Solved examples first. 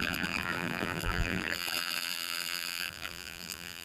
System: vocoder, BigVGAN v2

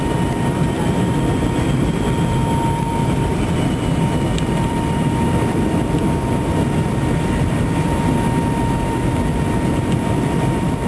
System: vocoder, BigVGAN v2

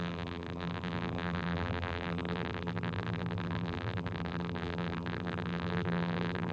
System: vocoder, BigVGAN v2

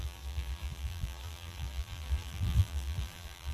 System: vocoder, BigVGAN v2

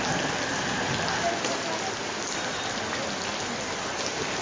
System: none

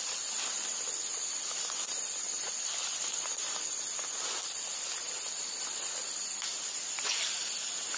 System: none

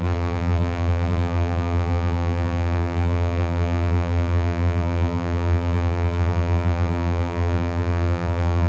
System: vocoder, BigVGAN v2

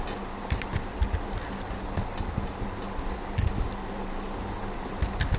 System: none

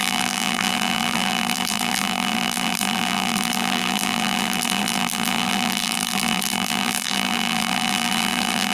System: vocoder, BigVGAN v2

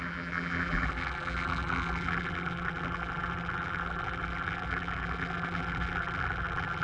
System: vocoder, BigVGAN v2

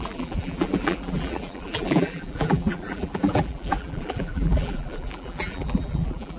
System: vocoder, BigVGAN v2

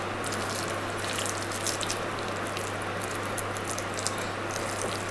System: none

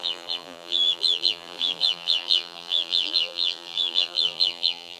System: vocoder, BigVGAN v2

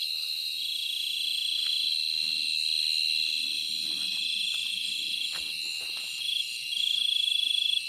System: none